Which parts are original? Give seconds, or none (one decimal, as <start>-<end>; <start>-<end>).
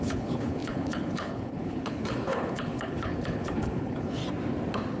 4.2-5.0